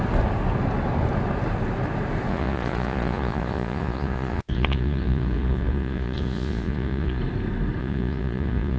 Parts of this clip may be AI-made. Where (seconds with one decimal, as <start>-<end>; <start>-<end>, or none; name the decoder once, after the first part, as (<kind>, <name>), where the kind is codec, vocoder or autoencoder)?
2.3-7.2 (vocoder, Vocos); 7.8-8.8